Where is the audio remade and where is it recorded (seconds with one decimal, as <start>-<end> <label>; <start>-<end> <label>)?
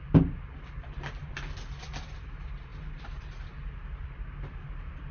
0.0-5.1 recorded